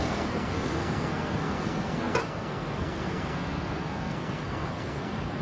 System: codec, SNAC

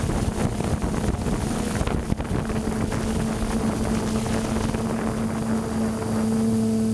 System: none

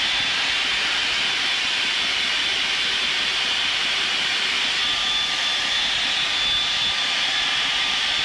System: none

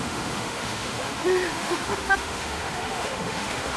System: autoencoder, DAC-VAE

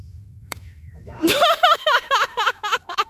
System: autoencoder, DAC-VAE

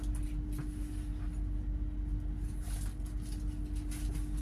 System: none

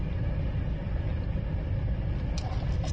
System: none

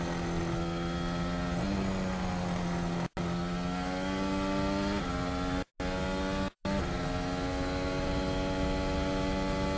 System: none